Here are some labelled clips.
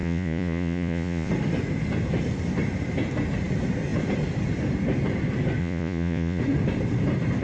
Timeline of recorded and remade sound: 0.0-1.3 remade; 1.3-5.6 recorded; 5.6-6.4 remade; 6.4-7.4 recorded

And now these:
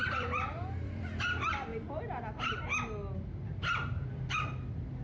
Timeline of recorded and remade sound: 0.0-1.7 remade; 1.7-5.0 recorded

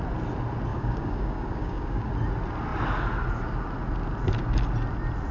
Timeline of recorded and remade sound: 0.0-0.7 recorded; 0.7-2.1 remade; 2.1-5.3 recorded

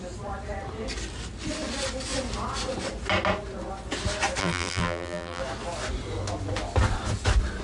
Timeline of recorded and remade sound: 0.0-4.4 recorded; 4.4-5.4 remade; 5.4-7.6 recorded

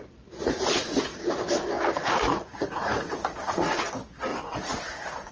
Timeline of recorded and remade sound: 0.0-0.4 recorded; 0.4-1.3 remade; 1.3-2.0 recorded; 2.0-3.8 remade; 3.8-4.3 recorded; 4.3-5.3 remade

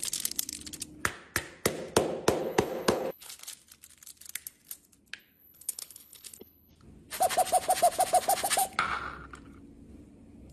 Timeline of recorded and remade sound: 0.0-2.4 recorded; 2.4-3.3 remade; 3.3-5.2 recorded; 5.2-6.7 remade; 6.7-10.5 recorded